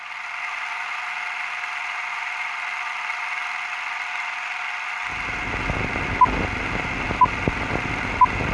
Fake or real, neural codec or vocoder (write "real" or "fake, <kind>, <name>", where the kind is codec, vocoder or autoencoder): real